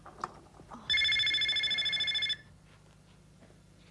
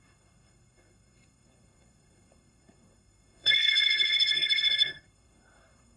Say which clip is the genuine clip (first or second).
first